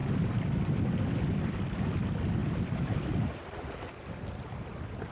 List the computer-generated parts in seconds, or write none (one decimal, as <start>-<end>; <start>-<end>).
none